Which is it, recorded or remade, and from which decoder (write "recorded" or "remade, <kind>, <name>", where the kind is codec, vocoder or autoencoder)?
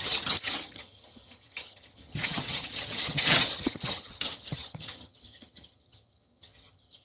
remade, vocoder, HiFi-GAN